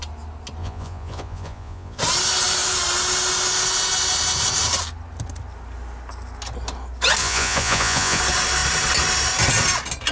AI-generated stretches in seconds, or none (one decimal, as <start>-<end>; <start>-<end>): 0.6-2.0; 7.2-8.2